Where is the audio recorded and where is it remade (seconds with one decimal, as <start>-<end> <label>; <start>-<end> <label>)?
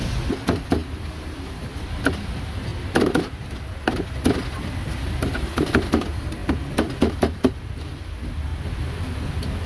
0.0-2.7 recorded; 2.7-3.2 remade; 3.2-9.7 recorded